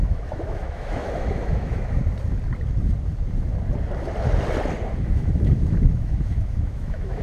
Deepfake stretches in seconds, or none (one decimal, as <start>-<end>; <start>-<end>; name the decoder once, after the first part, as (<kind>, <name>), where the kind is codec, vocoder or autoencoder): 0.0-2.0 (autoencoder, DAC-VAE); 5.0-7.2